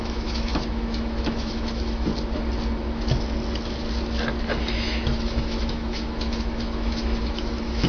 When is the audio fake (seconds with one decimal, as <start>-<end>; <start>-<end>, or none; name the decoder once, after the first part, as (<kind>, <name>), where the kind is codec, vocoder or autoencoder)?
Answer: 0.0-2.1 (autoencoder, DAC-VAE); 4.4-7.9